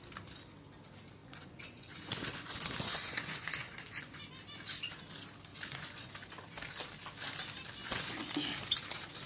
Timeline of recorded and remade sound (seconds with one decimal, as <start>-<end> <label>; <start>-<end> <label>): 0.0-1.2 recorded; 1.2-4.2 remade; 4.2-5.5 recorded; 5.5-6.1 remade; 6.1-7.8 recorded; 7.8-8.3 remade; 8.3-9.3 recorded